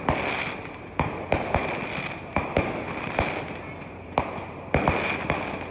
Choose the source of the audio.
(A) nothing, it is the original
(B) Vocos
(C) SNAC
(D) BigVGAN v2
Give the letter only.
A